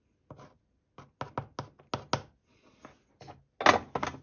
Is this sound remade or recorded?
recorded